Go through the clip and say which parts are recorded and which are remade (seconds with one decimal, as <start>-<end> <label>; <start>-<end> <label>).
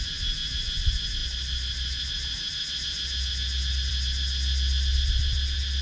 0.0-5.8 recorded